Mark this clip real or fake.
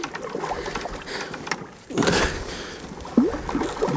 real